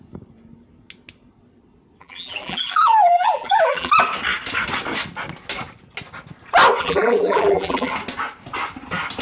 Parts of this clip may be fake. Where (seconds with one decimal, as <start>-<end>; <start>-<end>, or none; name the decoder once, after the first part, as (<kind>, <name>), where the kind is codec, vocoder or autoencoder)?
2.0-3.9 (vocoder, BigVGAN v2); 6.8-7.9